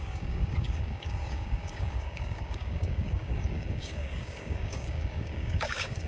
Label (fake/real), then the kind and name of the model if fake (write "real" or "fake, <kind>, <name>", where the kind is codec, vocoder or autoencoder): fake, codec, DAC